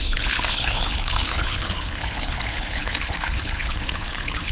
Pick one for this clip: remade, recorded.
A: remade